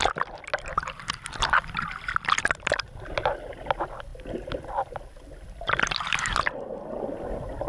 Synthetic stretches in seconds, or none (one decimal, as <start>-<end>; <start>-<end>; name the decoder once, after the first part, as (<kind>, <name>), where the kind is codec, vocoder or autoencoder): none